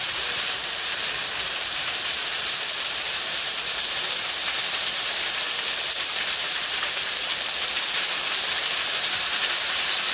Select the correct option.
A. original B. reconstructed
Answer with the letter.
B